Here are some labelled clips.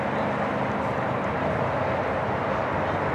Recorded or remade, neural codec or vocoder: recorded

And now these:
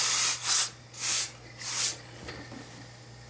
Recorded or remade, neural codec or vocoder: recorded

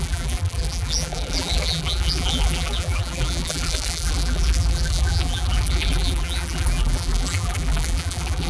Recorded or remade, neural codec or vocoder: remade, vocoder, BigVGAN v2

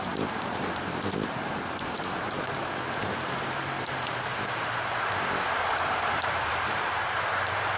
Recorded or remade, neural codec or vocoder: remade, vocoder, BigVGAN v2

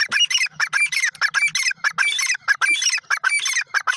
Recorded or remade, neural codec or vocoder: recorded